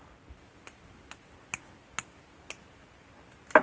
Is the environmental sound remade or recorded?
recorded